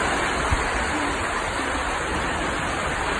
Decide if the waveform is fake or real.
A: real